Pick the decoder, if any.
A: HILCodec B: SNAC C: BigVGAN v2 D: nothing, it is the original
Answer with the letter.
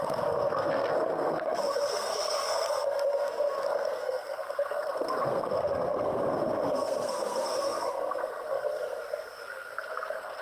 B